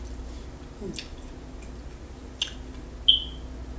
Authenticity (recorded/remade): recorded